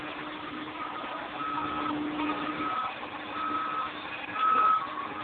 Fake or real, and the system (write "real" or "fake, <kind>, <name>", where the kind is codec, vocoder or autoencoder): real